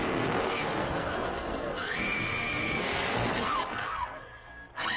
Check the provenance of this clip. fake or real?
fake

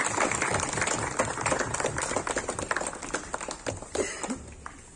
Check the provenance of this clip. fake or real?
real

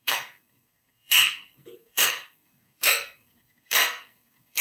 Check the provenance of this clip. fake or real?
fake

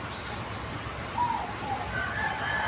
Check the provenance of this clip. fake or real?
real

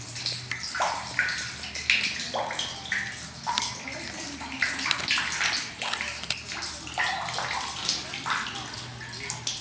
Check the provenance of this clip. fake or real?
real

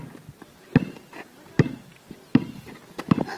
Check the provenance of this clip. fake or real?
real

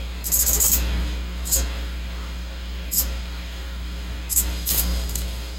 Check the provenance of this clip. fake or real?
fake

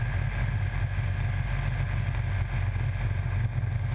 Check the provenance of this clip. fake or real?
real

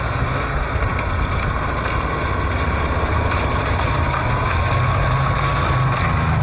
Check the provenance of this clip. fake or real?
real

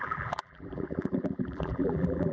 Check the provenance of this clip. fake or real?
fake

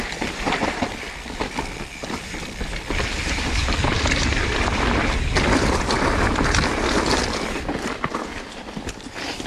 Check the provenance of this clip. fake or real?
fake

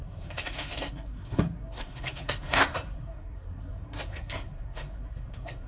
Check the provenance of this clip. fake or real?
fake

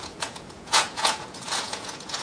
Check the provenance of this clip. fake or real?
fake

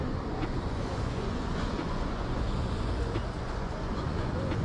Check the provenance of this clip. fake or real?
fake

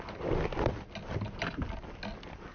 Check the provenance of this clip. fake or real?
real